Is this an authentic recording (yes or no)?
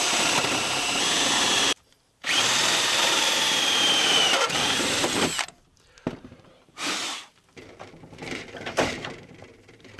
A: no